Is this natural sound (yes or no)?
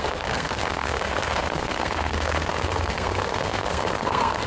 no